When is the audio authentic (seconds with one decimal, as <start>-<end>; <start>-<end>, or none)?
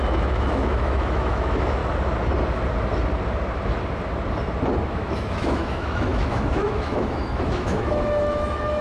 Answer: 1.8-4.9